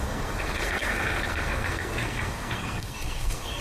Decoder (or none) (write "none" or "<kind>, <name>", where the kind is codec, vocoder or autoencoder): codec, SNAC